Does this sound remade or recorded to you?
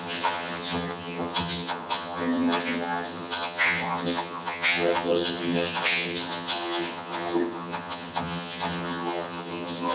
remade